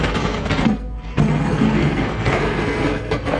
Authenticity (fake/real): fake